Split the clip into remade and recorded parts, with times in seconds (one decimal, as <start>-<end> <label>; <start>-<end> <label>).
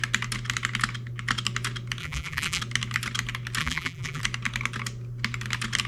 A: 0.0-2.0 recorded; 2.0-2.6 remade; 2.6-3.6 recorded; 3.6-4.2 remade; 4.2-5.9 recorded